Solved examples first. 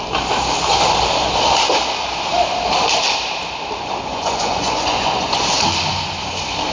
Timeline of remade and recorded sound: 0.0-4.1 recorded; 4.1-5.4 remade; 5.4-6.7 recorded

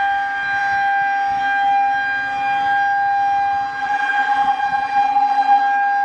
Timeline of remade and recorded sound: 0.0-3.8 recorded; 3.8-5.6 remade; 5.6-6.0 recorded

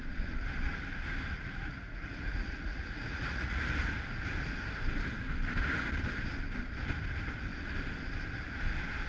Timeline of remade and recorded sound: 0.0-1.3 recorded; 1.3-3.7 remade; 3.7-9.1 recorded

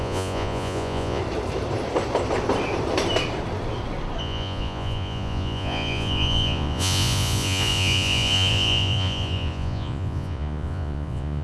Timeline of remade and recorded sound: 0.0-1.2 remade; 1.2-4.2 recorded; 4.2-11.4 remade

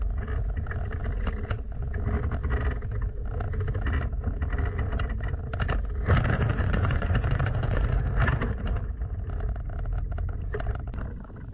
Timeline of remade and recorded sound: 0.0-6.5 recorded; 6.5-8.0 remade; 8.0-11.5 recorded

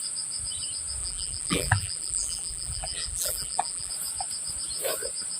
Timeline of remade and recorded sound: 0.0-1.0 recorded; 1.0-3.9 remade; 3.9-5.4 recorded

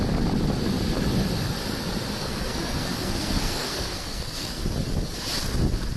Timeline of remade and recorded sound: 0.0-2.2 recorded; 2.2-4.6 remade; 4.6-6.0 recorded

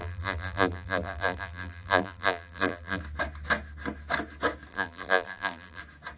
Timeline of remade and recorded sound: 0.0-3.0 remade; 3.0-4.7 recorded; 4.7-5.8 remade; 5.8-6.2 recorded